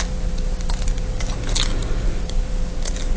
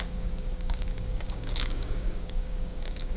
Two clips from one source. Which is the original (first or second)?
first